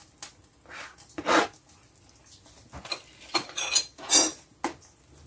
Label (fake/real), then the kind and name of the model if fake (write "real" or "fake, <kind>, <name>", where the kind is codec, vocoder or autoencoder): real